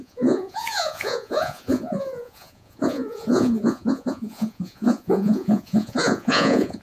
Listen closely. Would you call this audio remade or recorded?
remade